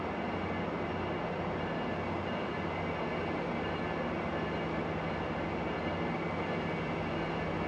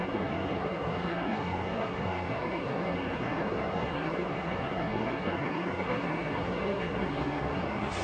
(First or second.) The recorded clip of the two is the first